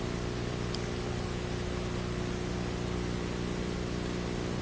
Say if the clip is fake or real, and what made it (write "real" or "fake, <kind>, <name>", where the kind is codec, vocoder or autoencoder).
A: real